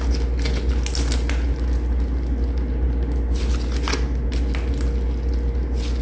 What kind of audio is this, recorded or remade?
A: recorded